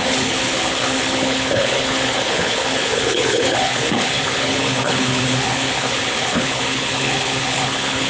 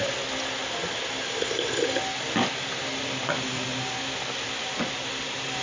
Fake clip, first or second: first